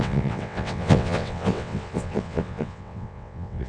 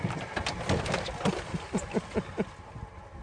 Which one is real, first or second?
second